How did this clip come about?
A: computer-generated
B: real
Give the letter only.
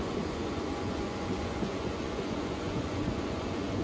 A